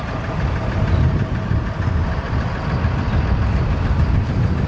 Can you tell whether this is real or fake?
real